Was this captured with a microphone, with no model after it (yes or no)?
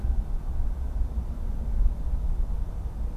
yes